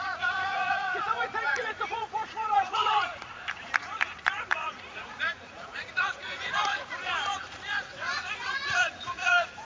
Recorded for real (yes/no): no